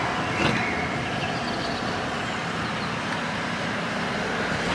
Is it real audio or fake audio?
real